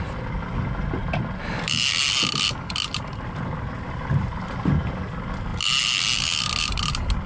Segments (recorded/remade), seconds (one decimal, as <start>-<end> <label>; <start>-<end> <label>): 0.0-7.3 recorded